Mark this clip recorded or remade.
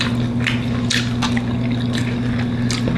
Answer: recorded